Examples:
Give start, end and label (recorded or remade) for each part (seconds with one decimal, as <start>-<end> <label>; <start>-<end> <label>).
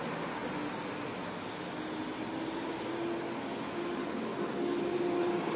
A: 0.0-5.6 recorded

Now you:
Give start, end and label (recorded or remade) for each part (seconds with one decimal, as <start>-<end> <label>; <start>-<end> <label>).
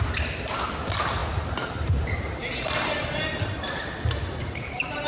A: 0.0-1.2 recorded; 1.2-3.7 remade; 3.7-4.2 recorded; 4.2-5.1 remade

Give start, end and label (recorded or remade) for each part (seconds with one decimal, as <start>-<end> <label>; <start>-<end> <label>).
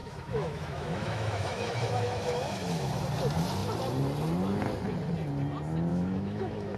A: 0.0-2.9 remade; 2.9-5.9 recorded; 5.9-6.8 remade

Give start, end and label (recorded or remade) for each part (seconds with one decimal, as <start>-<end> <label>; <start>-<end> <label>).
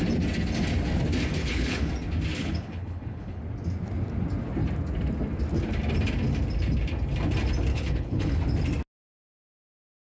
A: 0.0-1.4 recorded; 1.4-1.9 remade; 1.9-2.4 recorded; 2.4-3.4 remade; 3.4-7.7 recorded; 7.7-8.4 remade; 8.4-10.1 recorded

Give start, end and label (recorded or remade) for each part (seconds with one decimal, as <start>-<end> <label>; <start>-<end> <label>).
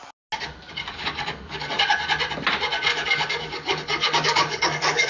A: 0.0-0.8 recorded; 0.8-1.8 remade; 1.8-2.9 recorded; 2.9-5.1 remade